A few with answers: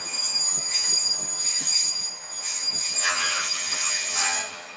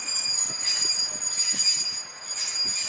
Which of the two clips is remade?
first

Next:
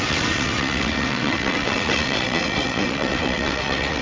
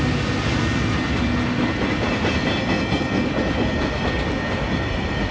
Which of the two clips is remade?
first